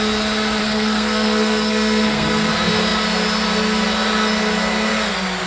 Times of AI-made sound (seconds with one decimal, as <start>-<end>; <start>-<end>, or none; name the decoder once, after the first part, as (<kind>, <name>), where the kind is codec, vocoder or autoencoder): 0.6-2.5 (codec, SNAC)